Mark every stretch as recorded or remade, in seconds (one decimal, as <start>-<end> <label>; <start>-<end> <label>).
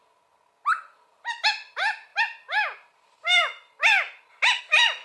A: 0.0-5.0 recorded